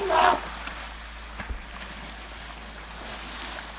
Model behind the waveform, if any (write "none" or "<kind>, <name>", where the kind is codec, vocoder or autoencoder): none